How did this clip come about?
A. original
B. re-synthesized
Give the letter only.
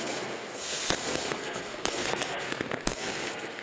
B